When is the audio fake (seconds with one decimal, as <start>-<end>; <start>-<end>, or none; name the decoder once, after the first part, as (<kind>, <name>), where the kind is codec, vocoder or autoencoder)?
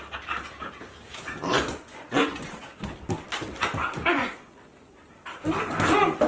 1.7-2.5 (vocoder, Vocos); 3.8-5.1